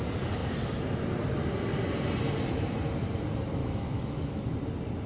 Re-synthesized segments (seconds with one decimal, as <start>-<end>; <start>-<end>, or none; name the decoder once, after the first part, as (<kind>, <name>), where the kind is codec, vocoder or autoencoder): 3.6-4.4 (autoencoder, DAC-VAE)